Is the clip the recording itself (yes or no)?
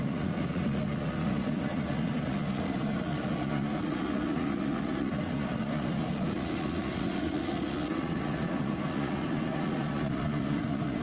no